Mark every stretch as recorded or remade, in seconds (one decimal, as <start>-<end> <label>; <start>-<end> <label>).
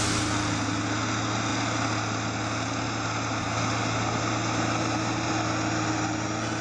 0.0-6.6 recorded